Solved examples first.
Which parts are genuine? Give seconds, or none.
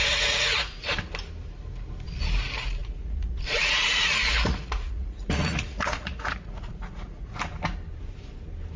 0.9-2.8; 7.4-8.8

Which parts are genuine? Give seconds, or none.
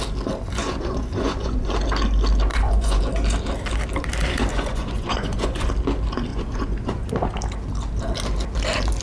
0.0-0.6; 1.7-2.5; 3.0-4.5; 5.7-6.3; 7.1-9.0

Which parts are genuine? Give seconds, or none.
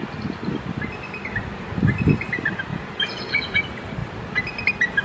0.0-2.7; 3.6-5.0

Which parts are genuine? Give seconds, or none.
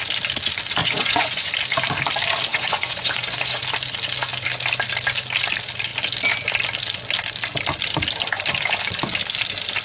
0.0-0.8; 1.5-2.5; 3.6-9.8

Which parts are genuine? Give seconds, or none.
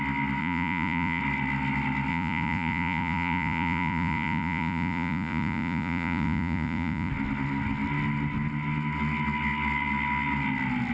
0.0-0.4; 1.2-2.1; 7.1-10.9